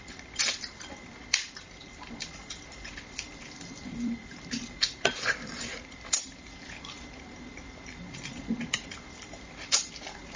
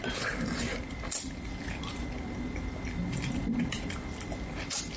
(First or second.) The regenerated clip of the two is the first